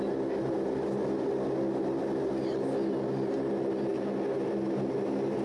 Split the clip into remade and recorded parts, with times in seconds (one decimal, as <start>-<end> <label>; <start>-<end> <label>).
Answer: 0.0-5.4 recorded